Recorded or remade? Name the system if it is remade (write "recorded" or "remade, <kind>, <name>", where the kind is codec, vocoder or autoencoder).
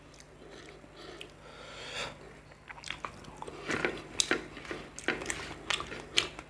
recorded